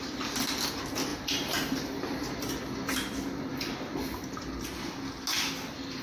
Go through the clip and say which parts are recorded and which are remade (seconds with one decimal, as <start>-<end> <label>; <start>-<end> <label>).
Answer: 0.0-1.1 recorded; 1.1-2.5 remade; 2.5-6.0 recorded